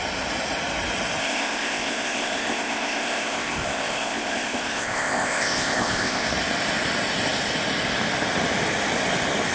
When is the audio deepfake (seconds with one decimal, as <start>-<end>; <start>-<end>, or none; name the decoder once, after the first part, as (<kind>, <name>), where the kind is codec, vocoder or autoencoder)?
1.2-6.3 (codec, ZipCodec)